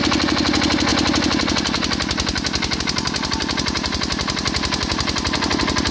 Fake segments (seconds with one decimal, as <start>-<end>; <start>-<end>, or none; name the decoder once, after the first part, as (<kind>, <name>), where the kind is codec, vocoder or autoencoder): none